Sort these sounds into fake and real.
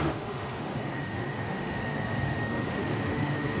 fake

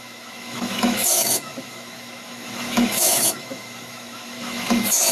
fake